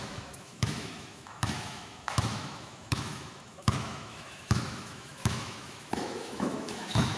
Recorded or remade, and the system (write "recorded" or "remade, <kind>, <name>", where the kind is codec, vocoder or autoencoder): remade, autoencoder, DAC-VAE